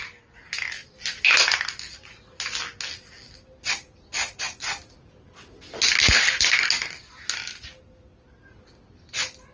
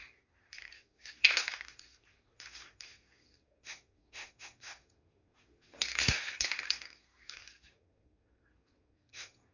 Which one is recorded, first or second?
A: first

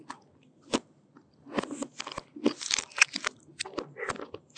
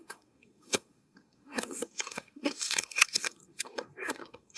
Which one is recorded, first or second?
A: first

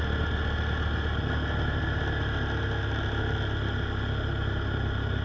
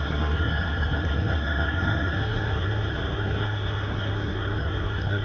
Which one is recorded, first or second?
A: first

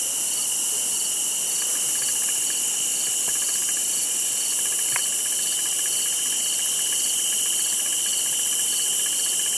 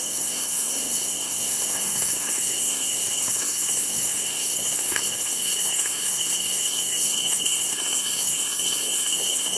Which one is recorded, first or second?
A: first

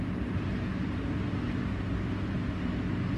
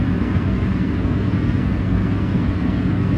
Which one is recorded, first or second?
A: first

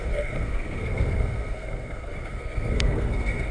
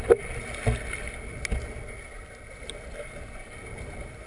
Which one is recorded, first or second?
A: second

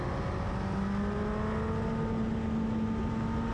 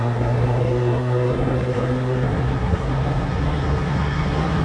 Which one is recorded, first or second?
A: first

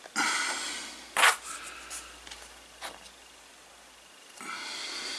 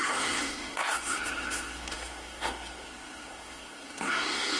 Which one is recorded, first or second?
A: first